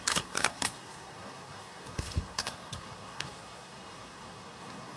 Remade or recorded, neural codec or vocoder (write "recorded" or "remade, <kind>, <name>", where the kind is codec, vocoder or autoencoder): remade, codec, SNAC